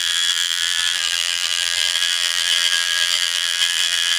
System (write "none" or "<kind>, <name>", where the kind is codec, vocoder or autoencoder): vocoder, BigVGAN v2